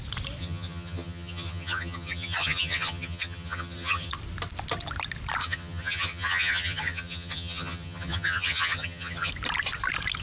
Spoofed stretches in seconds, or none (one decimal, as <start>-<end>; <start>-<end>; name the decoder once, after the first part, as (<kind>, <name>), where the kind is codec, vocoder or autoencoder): 0.4-4.1 (vocoder, HiFi-GAN); 5.4-9.3